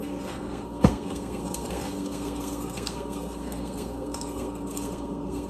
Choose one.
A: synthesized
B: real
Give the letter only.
A